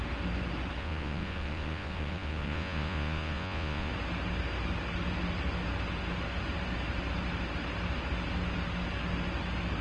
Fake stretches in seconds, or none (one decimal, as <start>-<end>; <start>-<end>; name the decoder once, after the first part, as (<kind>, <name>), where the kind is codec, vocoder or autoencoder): 0.8-3.9 (vocoder, Vocos)